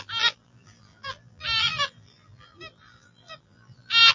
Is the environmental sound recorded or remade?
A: remade